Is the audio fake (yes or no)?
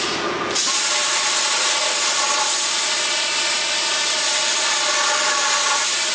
no